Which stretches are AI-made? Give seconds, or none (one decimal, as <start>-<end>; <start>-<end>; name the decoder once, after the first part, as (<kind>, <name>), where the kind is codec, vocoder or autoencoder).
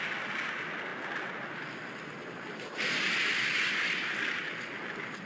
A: none